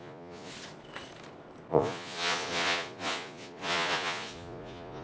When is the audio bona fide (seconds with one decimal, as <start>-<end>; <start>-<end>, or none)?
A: 0.5-1.7